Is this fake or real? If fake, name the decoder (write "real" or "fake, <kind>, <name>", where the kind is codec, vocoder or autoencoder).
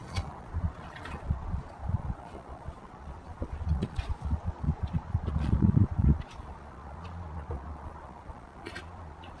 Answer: fake, vocoder, Vocos